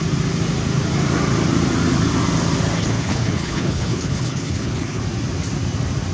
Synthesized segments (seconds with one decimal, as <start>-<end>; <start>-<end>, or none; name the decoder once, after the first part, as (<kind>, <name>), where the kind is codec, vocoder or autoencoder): 2.8-5.0 (codec, HILCodec)

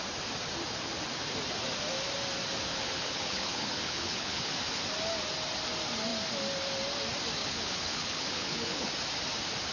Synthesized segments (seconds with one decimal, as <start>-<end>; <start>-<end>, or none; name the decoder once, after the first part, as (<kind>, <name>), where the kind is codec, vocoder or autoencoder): 2.7-4.5 (codec, HILCodec); 7.4-8.9

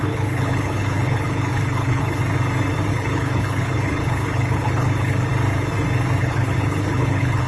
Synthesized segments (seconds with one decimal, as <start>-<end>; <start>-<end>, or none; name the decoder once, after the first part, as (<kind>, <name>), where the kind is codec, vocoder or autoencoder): 0.0-2.2 (codec, HILCodec); 2.9-5.3; 6.2-7.5